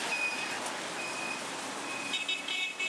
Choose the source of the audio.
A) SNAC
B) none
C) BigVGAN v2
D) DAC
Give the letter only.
B